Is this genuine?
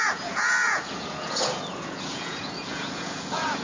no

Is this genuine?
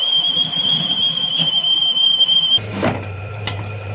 no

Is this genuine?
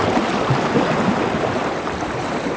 yes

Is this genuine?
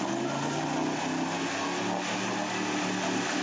yes